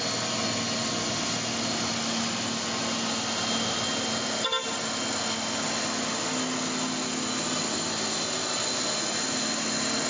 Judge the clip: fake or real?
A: real